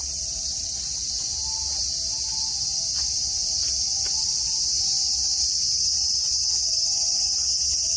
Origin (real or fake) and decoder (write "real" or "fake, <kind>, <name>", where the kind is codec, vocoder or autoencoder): real